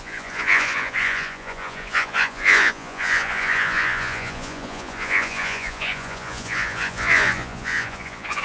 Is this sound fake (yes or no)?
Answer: yes